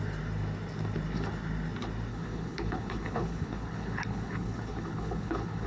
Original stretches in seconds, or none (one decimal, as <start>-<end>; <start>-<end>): 0.0-2.1